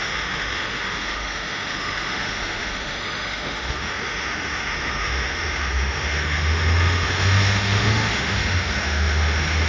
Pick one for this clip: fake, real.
fake